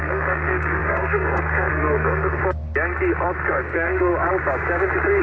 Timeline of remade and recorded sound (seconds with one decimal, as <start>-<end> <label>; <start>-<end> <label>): 0.0-2.4 remade; 2.4-3.5 recorded; 3.5-4.1 remade; 4.1-5.2 recorded